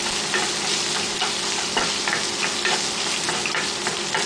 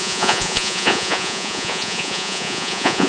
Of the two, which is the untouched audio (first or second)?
first